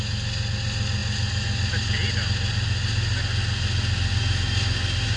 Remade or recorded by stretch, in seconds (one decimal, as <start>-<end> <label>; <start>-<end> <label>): 0.0-5.2 recorded